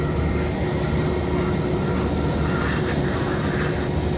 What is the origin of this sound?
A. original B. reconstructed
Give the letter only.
A